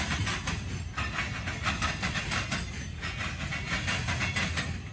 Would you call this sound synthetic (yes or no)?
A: no